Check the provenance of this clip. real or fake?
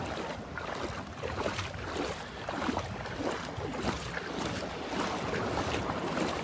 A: real